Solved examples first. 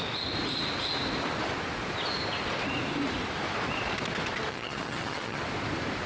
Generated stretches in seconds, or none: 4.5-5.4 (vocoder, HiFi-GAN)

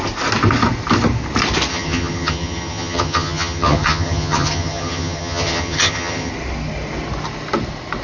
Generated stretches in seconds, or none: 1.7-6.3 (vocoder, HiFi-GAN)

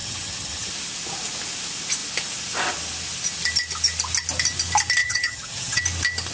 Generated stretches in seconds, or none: 0.0-0.7 (vocoder, HiFi-GAN); 5.0-5.8